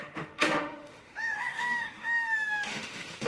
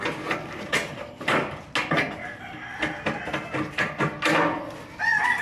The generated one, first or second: first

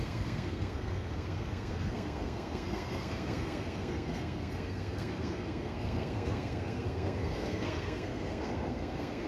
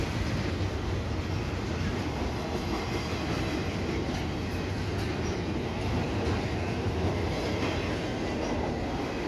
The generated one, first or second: first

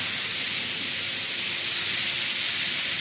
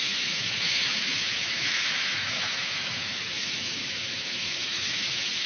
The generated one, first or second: second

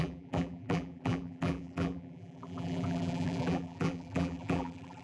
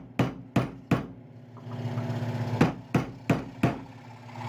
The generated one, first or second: first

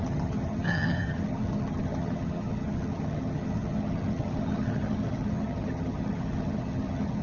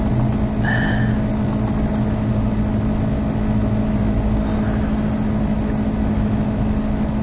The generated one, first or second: first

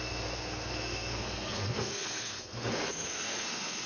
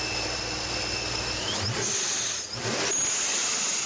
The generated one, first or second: first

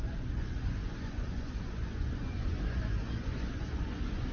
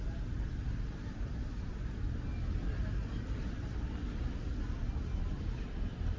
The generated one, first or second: first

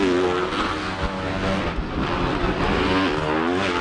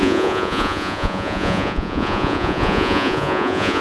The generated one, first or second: second